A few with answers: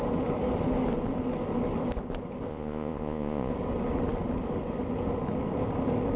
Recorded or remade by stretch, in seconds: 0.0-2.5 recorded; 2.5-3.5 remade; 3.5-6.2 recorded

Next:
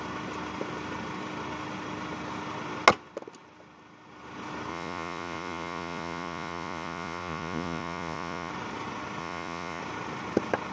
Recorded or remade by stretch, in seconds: 0.0-4.7 recorded; 4.7-8.5 remade; 8.5-9.2 recorded; 9.2-9.8 remade; 9.8-10.7 recorded

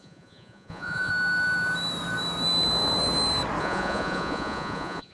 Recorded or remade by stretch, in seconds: 0.0-1.1 remade; 1.1-3.6 recorded; 3.6-5.1 remade

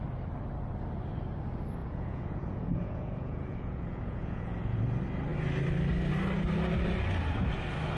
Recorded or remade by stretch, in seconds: 0.0-1.8 recorded; 1.8-4.8 remade; 4.8-8.0 recorded

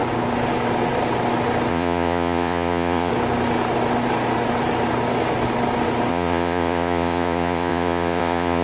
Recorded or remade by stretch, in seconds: 0.0-1.7 recorded; 1.7-3.1 remade; 3.1-6.1 recorded; 6.1-8.6 remade